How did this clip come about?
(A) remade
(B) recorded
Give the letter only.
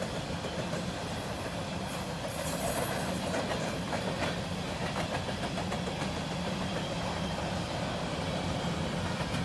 B